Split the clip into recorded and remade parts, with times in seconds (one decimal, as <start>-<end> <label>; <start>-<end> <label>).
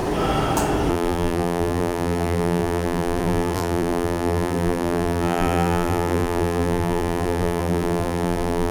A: 0.0-0.9 recorded; 0.9-8.7 remade